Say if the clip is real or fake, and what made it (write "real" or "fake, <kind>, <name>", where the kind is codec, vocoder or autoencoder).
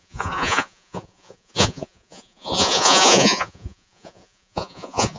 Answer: fake, vocoder, Vocos